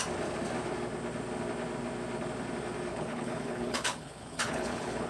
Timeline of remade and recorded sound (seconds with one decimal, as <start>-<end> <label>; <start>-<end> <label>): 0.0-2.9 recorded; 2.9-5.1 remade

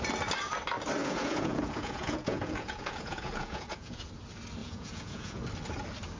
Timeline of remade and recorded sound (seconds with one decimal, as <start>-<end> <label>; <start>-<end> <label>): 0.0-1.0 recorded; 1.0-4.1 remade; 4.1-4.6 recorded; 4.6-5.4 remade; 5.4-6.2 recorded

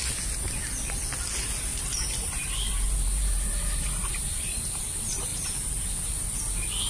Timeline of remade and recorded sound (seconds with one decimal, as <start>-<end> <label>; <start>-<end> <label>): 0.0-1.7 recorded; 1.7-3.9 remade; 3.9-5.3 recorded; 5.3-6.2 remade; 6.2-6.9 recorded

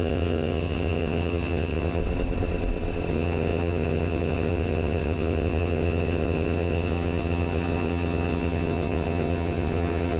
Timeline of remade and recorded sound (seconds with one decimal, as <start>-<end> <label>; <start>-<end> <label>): 0.0-2.0 remade; 2.0-3.1 recorded; 3.1-10.2 remade